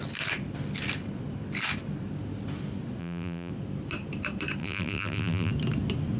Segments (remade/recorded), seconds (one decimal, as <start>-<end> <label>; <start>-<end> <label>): 0.0-3.0 recorded; 3.0-3.5 remade; 3.5-4.6 recorded; 4.6-5.5 remade; 5.5-6.2 recorded